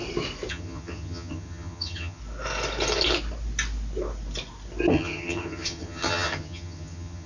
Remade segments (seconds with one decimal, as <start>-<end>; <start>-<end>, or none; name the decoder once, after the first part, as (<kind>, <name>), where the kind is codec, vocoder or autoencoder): 0.5-2.2 (vocoder, HiFi-GAN); 4.9-7.3